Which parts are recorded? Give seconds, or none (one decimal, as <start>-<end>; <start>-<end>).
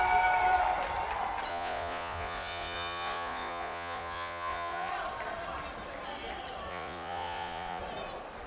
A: 0.0-1.5; 4.9-6.7; 7.8-8.5